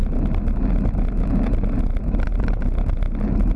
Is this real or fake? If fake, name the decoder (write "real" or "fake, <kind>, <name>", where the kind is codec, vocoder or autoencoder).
real